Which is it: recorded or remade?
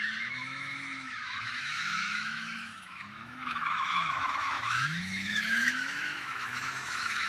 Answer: remade